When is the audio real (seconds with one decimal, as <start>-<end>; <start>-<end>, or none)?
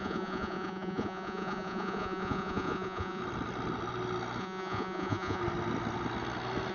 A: 3.2-4.4; 5.4-6.7